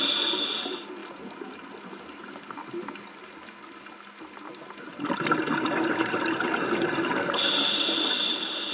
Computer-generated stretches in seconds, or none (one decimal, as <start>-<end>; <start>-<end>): none